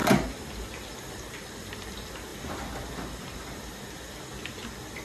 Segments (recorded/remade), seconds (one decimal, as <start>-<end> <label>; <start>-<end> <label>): 0.0-1.9 remade; 1.9-5.0 recorded